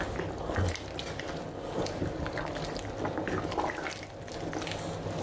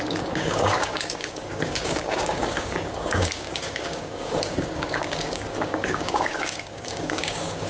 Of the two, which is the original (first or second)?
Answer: first